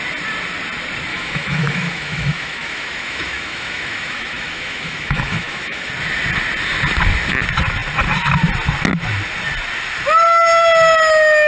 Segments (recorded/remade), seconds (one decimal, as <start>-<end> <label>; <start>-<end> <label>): 0.0-1.1 recorded; 1.1-5.9 remade; 5.9-11.5 recorded